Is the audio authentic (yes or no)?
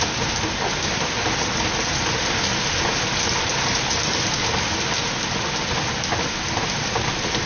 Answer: yes